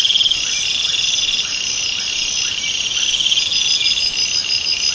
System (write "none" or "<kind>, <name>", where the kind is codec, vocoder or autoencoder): none